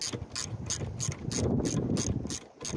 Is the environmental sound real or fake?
real